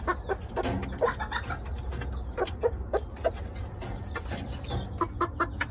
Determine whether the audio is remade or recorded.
recorded